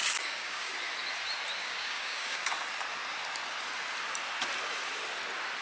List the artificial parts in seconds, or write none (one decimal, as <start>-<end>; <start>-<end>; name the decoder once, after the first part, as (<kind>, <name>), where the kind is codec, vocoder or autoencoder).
0.0-0.7 (codec, DAC); 1.6-2.4